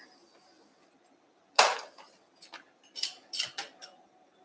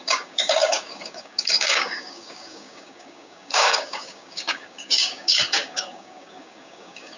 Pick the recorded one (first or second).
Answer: first